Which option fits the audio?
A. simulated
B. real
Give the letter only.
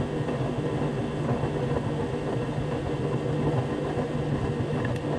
B